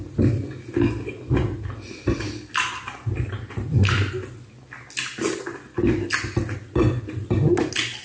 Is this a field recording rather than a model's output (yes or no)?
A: yes